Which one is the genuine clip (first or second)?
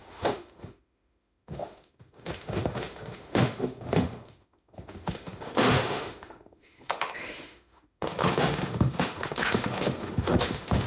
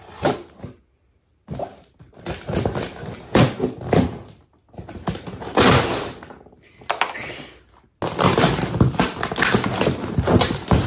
second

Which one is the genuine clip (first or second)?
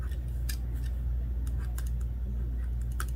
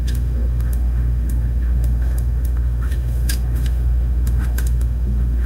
first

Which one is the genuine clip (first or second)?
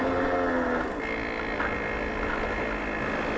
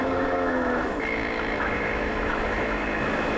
first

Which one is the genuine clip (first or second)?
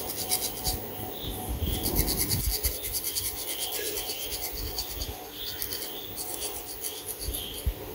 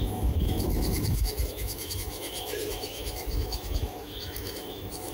first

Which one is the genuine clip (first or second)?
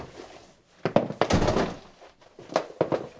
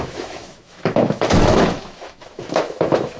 first